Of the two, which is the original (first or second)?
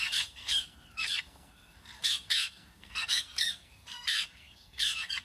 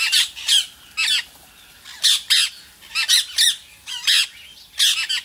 second